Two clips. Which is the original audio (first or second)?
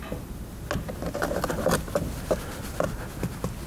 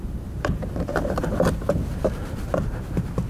first